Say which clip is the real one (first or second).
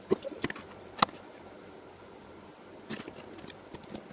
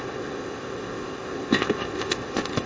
first